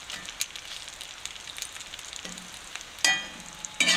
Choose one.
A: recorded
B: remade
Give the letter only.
A